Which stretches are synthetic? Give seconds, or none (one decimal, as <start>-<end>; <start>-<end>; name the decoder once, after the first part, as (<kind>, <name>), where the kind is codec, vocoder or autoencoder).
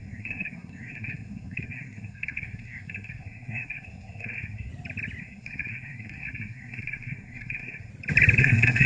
0.0-4.7 (codec, SNAC); 5.2-7.9; 8.4-8.9